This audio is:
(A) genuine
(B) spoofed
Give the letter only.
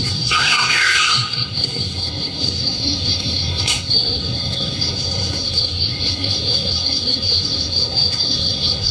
B